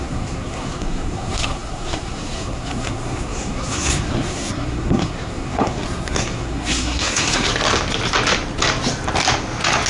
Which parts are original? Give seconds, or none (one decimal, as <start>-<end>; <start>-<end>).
7.5-9.9